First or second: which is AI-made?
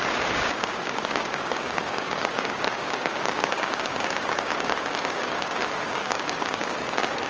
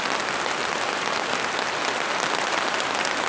first